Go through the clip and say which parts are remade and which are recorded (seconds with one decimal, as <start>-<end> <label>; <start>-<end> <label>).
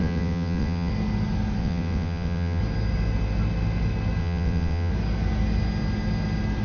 0.0-0.9 remade; 0.9-1.6 recorded; 1.6-2.6 remade; 2.6-4.2 recorded; 4.2-4.9 remade; 4.9-6.6 recorded